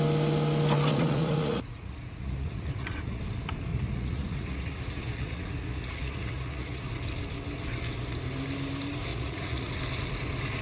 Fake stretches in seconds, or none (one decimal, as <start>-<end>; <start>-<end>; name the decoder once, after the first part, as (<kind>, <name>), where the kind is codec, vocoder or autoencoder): 0.9-3.2 (vocoder, Vocos); 3.7-6.9; 9.1-9.7